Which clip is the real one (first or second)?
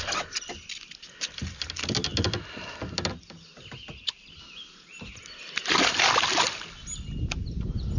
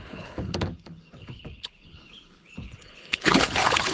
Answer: first